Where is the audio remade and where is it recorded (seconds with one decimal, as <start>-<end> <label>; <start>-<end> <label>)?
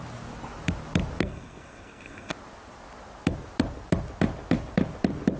0.0-1.2 recorded; 1.2-2.3 remade; 2.3-5.4 recorded